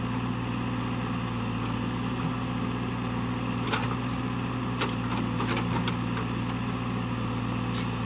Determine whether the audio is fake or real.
real